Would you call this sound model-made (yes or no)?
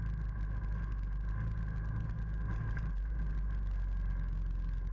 no